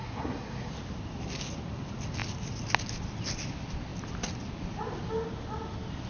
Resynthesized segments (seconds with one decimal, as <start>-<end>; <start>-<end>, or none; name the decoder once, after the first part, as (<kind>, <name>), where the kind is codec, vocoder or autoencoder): 0.0-0.7 (codec, SNAC)